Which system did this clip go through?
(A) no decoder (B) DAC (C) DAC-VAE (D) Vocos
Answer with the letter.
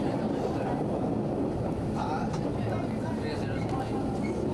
A